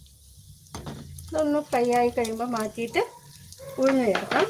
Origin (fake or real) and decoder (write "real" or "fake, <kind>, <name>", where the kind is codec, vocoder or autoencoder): real